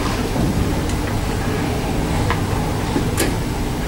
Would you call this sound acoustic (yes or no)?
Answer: yes